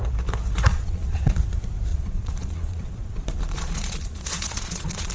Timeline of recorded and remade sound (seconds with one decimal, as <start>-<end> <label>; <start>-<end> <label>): 0.0-0.7 recorded; 0.7-1.4 remade; 1.4-1.9 recorded; 1.9-5.1 remade